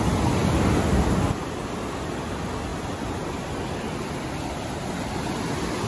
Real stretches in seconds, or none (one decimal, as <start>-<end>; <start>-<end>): 0.0-5.9